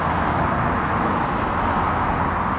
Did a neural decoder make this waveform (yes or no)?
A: no